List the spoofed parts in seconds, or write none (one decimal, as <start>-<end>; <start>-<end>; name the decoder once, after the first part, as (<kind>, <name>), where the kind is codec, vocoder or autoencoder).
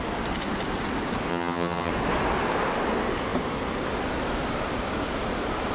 1.3-1.9 (vocoder, HiFi-GAN)